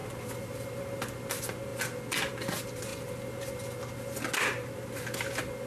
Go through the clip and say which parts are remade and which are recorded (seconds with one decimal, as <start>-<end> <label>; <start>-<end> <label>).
0.0-5.7 recorded